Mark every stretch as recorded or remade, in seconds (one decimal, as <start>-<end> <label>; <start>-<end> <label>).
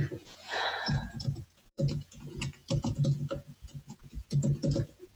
0.0-5.1 remade